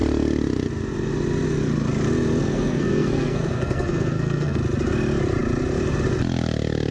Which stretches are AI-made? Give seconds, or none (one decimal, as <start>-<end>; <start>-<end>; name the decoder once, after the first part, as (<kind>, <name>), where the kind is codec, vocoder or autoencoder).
2.4-4.6 (codec, SNAC)